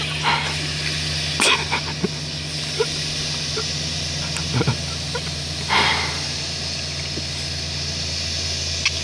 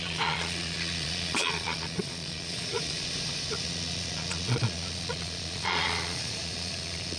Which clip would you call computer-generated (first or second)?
second